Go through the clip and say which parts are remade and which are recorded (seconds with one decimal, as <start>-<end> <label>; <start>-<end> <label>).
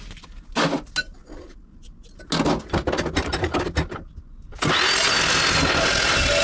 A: 0.0-6.4 recorded